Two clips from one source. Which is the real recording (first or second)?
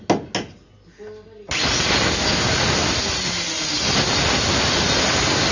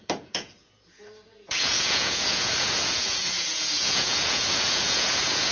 first